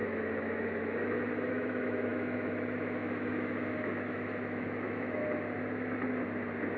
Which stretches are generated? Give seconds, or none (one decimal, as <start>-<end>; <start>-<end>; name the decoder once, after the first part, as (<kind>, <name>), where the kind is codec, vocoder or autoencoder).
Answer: 0.0-5.2 (autoencoder, DAC-VAE)